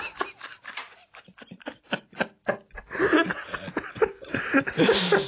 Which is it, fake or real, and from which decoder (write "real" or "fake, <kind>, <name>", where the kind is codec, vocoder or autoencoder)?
real